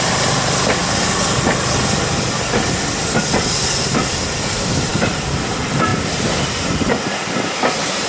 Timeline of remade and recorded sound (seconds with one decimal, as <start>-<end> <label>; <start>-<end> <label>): 0.0-0.8 remade; 0.8-3.4 recorded; 3.4-8.1 remade